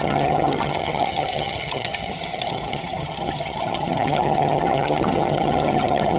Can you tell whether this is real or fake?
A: fake